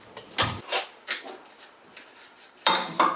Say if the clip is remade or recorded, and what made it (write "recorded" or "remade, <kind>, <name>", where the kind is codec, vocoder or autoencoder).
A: remade, vocoder, BigVGAN v2